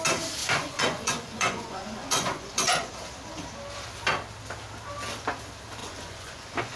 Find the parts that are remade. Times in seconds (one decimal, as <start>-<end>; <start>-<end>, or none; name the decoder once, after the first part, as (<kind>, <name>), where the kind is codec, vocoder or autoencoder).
0.4-2.9 (vocoder, Vocos); 5.8-6.8